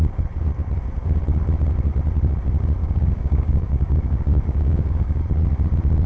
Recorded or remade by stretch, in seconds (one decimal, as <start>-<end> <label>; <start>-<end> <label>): 0.0-2.8 recorded; 2.8-5.2 remade; 5.2-6.1 recorded